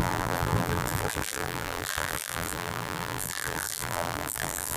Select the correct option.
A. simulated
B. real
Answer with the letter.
A